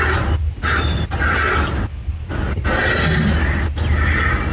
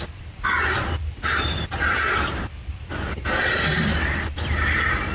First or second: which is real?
first